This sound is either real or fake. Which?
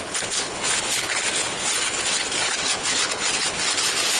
fake